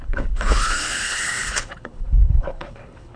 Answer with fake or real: fake